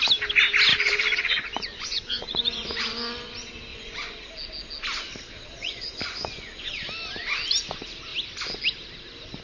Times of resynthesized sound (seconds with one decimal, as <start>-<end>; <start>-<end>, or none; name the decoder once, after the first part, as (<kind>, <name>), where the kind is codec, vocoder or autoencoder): 0.7-2.8 (vocoder, Vocos); 3.7-4.2; 5.6-6.7